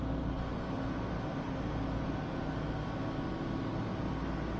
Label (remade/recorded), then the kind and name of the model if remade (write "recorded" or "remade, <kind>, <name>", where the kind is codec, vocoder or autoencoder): recorded